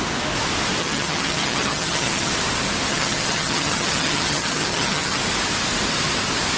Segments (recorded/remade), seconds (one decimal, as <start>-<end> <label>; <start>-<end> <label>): 0.0-0.8 recorded; 0.8-2.3 remade; 2.3-2.9 recorded; 2.9-5.2 remade; 5.2-6.6 recorded